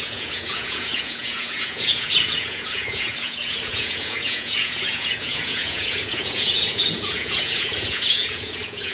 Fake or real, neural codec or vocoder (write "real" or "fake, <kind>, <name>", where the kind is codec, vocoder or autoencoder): fake, vocoder, Vocos